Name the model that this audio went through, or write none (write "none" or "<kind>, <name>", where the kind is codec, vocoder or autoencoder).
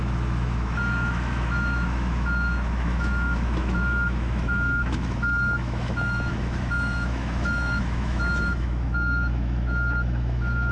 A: autoencoder, DAC-VAE